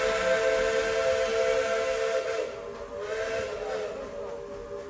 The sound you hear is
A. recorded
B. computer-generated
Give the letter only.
A